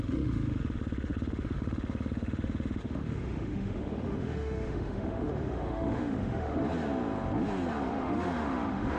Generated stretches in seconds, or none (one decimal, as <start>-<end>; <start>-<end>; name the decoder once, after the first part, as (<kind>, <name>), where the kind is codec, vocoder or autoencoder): 0.0-6.6 (autoencoder, DAC-VAE); 7.9-9.0

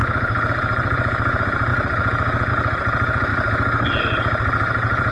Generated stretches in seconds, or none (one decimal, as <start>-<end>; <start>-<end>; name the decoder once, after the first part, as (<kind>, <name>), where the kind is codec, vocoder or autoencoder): 0.0-3.3 (vocoder, BigVGAN v2); 4.0-5.1

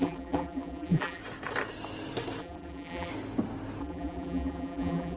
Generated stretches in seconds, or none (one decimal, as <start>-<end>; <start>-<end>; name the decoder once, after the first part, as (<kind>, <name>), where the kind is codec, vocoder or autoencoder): 0.0-1.2 (vocoder, BigVGAN v2); 2.4-3.1; 3.8-5.2

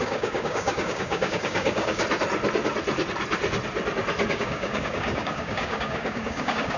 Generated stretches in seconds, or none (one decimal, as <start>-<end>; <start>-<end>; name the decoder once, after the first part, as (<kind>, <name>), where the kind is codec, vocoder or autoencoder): 0.0-2.0 (codec, DAC); 4.3-6.8

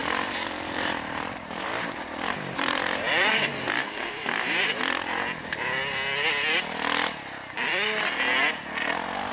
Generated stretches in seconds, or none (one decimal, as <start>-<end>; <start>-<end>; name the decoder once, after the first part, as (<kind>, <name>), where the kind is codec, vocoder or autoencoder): 0.0-4.8 (vocoder, BigVGAN v2)

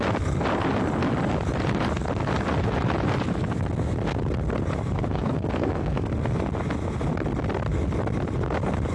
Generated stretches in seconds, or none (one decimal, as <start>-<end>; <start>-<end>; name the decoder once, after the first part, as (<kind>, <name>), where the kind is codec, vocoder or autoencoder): 5.1-6.1 (codec, SNAC)